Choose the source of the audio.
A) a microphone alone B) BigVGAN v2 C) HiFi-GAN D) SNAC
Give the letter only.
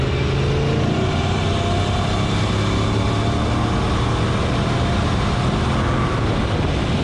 A